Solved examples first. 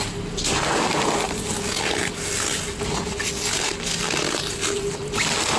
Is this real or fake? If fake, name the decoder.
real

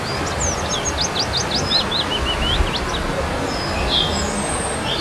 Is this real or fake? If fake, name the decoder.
real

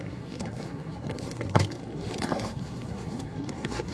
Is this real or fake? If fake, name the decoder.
fake, codec, SNAC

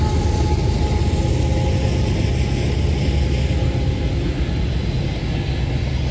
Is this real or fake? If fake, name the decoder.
real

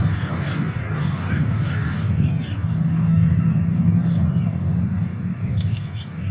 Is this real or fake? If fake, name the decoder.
fake, codec, DAC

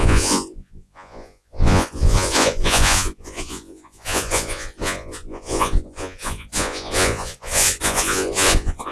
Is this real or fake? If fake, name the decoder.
fake, vocoder, Vocos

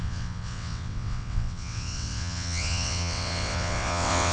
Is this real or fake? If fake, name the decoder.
fake, vocoder, WaveNeXt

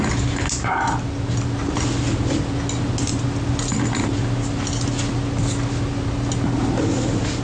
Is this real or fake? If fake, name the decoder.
real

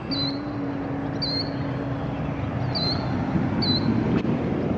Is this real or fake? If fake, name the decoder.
real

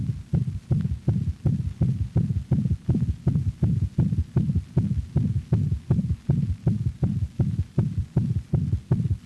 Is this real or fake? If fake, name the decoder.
real